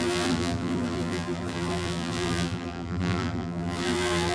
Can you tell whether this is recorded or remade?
remade